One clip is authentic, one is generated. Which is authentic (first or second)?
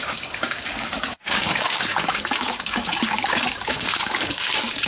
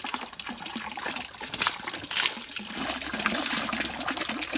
second